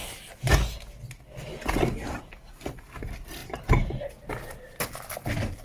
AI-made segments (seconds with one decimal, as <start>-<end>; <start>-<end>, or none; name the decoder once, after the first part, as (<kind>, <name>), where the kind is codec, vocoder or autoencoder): 1.5-2.2 (vocoder, BigVGAN v2)